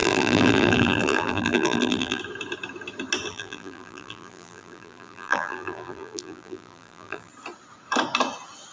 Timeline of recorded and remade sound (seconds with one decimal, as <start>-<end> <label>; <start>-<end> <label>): 0.0-2.2 remade; 2.2-3.3 recorded; 3.3-7.3 remade; 7.3-8.7 recorded